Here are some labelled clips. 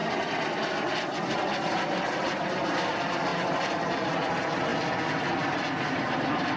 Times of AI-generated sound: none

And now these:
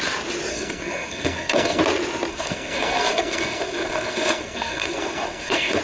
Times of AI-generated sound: 0.5-1.8; 2.3-5.8

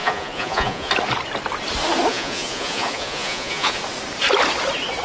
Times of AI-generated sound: 0.0-0.9; 2.1-3.8

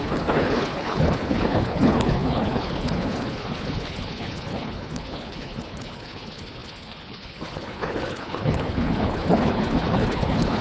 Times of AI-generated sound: 0.0-10.6

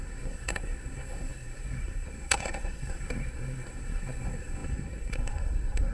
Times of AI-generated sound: 0.0-5.9

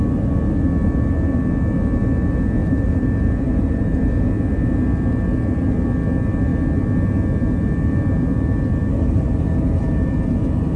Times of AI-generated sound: 2.6-4.0

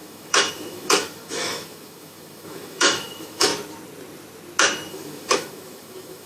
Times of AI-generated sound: 0.0-3.5; 4.9-6.3